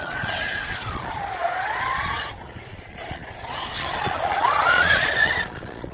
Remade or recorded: remade